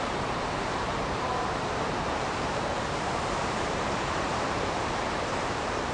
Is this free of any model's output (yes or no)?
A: no